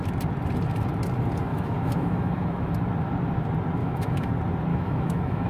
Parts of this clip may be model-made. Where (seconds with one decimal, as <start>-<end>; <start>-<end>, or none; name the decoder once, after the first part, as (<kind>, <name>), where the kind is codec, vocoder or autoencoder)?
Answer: 1.5-2.7 (autoencoder, DAC-VAE); 3.8-4.3; 4.7-5.5